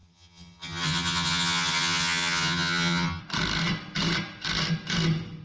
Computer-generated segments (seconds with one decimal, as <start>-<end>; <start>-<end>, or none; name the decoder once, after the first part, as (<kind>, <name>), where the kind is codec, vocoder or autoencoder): 0.0-3.2 (vocoder, HiFi-GAN)